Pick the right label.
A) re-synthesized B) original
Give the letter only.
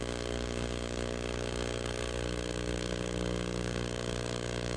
A